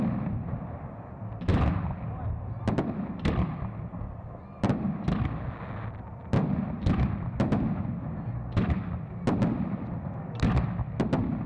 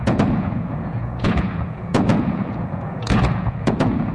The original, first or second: first